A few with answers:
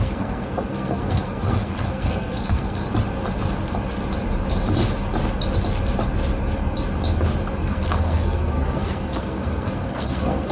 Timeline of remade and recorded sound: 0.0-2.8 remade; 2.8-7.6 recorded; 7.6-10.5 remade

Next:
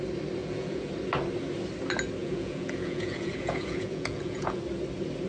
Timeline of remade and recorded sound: 0.0-0.4 recorded; 0.4-0.9 remade; 0.9-2.2 recorded; 2.2-4.6 remade; 4.6-5.3 recorded

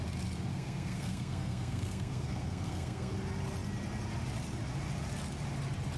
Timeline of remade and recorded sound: 0.0-0.5 recorded; 0.5-3.1 remade; 3.1-6.0 recorded